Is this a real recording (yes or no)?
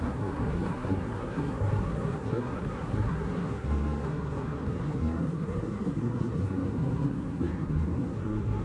no